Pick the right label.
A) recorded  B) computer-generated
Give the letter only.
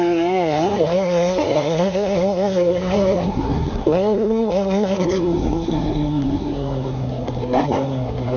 B